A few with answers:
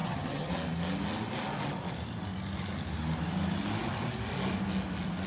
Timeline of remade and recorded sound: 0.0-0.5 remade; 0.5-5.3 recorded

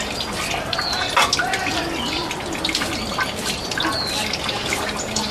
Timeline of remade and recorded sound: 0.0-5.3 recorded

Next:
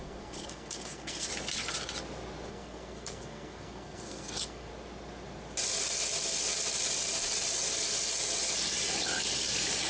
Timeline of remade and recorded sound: 0.0-1.3 remade; 1.3-2.5 recorded; 2.5-4.7 remade; 4.7-9.9 recorded

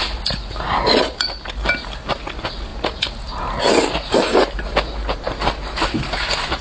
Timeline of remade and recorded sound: 0.0-6.6 recorded

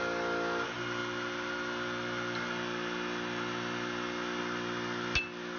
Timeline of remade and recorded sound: 0.0-5.6 recorded

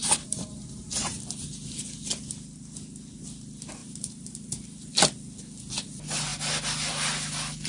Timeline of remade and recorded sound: 0.0-1.5 remade; 1.5-3.8 recorded; 3.8-4.9 remade; 4.9-7.7 recorded